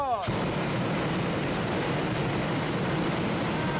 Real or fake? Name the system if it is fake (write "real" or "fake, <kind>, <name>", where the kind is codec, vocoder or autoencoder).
real